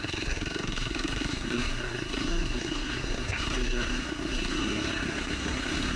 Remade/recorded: remade